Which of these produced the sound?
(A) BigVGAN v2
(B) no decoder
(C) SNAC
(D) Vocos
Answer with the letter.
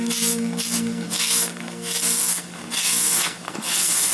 C